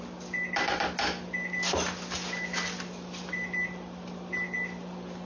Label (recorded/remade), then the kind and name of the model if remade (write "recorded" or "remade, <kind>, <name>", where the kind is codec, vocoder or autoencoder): recorded